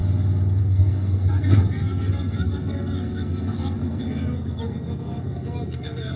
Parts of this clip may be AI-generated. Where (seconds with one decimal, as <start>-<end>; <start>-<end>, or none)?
0.6-6.2